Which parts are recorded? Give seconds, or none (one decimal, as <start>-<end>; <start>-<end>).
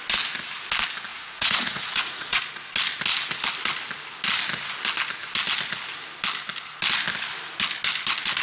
0.0-1.1; 2.4-8.4